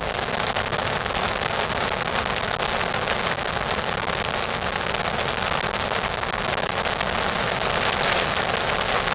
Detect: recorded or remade recorded